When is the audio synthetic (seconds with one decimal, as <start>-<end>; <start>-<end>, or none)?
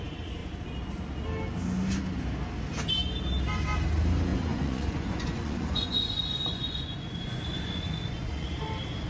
4.3-8.7